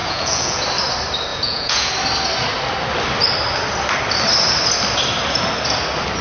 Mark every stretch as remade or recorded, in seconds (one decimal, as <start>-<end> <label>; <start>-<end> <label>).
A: 0.0-0.6 remade; 0.6-1.3 recorded; 1.3-1.9 remade; 1.9-6.2 recorded

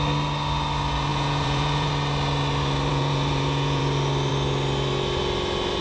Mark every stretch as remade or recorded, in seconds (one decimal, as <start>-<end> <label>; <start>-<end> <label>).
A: 0.0-1.1 recorded; 1.1-1.9 remade; 1.9-2.9 recorded; 2.9-3.8 remade; 3.8-5.8 recorded

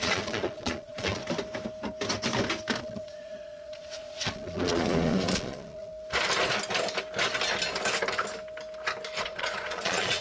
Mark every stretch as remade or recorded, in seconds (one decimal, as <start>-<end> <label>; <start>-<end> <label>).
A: 0.0-1.2 remade; 1.2-2.8 recorded; 2.8-5.9 remade; 5.9-9.2 recorded; 9.2-10.2 remade